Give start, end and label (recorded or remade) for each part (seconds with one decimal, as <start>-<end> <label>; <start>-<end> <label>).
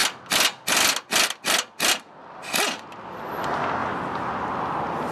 0.0-5.1 recorded